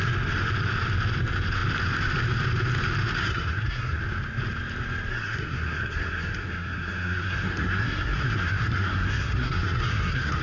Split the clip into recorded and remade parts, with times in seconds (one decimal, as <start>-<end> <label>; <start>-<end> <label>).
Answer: 0.0-3.2 recorded; 3.2-4.0 remade; 4.0-5.1 recorded; 5.1-10.4 remade

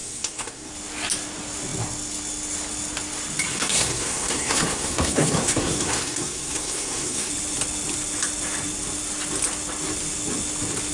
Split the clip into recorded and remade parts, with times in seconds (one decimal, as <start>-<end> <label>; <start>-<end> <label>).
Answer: 0.0-0.7 remade; 0.7-3.5 recorded; 3.5-7.3 remade; 7.3-10.9 recorded

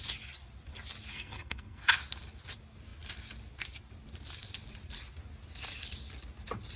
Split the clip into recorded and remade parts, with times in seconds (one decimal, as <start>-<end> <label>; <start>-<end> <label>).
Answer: 0.0-1.1 recorded; 1.1-1.8 remade; 1.8-6.8 recorded

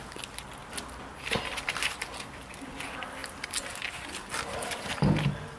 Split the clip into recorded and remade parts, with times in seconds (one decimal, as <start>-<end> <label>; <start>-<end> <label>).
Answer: 0.0-5.6 recorded

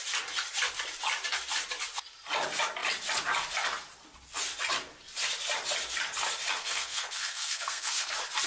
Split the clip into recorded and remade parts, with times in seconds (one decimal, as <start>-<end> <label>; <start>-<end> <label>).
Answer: 0.0-6.6 recorded; 6.6-8.1 remade; 8.1-8.5 recorded

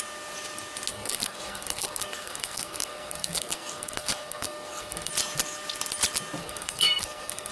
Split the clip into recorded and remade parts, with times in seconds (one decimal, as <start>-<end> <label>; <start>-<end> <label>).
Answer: 0.0-0.9 recorded; 0.9-5.1 remade; 5.1-6.4 recorded; 6.4-7.5 remade

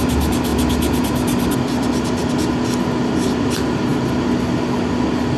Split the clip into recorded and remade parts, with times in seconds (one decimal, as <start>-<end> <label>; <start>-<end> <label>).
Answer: 0.0-5.4 recorded

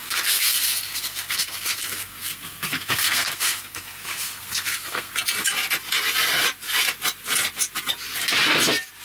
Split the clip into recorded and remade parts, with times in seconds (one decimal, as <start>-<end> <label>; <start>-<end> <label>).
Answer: 0.0-5.1 remade; 5.1-9.0 recorded